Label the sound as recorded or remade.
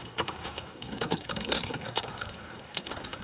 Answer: remade